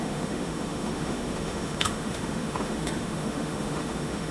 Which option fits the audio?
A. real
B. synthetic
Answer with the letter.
B